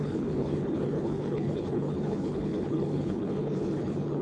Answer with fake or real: fake